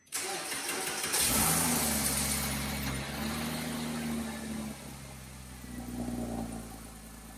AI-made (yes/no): no